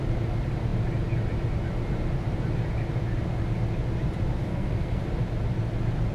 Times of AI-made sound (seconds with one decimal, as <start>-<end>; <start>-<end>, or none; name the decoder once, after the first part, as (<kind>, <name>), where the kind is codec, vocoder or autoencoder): 4.5-5.0 (codec, SNAC)